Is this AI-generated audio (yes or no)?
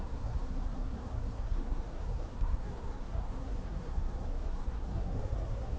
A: yes